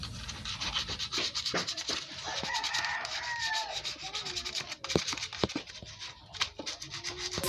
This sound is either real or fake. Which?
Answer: real